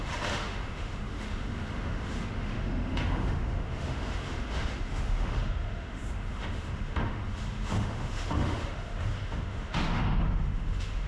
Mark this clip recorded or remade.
remade